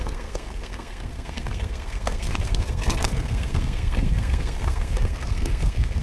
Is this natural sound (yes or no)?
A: no